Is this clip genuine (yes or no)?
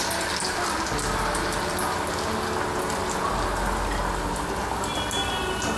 yes